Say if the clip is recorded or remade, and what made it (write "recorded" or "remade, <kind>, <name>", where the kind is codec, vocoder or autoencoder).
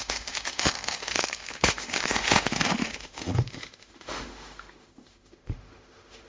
remade, autoencoder, DAC-VAE